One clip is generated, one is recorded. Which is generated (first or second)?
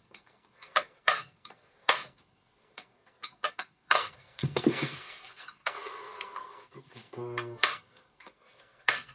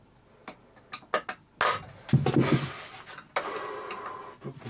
first